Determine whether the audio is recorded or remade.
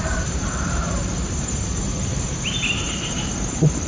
remade